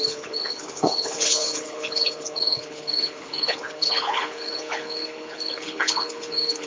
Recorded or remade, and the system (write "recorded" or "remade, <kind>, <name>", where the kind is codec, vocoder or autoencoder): remade, codec, HILCodec